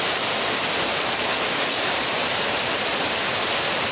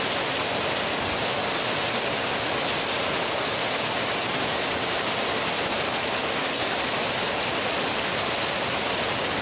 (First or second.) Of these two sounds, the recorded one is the second